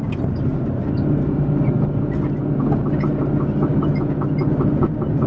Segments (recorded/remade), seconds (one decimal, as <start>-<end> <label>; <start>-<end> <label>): 0.0-5.3 recorded